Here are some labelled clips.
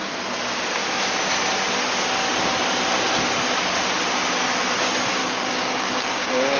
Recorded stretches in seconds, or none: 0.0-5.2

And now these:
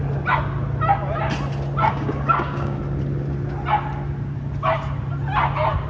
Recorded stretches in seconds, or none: 0.0-1.9; 2.8-5.9